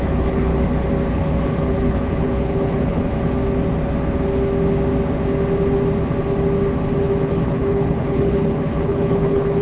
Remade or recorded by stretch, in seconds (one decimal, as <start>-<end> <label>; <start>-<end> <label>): 0.0-0.5 remade; 0.5-1.1 recorded; 1.1-3.1 remade; 3.1-7.2 recorded; 7.2-9.6 remade